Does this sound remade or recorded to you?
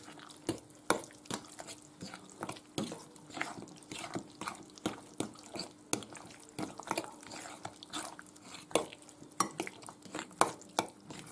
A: recorded